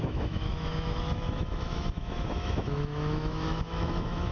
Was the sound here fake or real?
fake